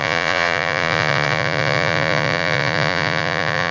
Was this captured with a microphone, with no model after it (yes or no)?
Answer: no